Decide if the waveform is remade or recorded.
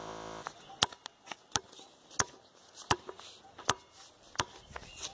recorded